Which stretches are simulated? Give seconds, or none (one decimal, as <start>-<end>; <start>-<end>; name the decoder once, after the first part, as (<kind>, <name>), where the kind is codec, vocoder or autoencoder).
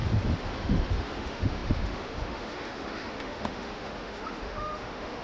0.6-5.2 (autoencoder, DAC-VAE)